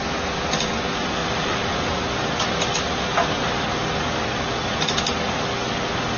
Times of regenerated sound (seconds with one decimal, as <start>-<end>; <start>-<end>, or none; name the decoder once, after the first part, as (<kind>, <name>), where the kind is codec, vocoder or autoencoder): none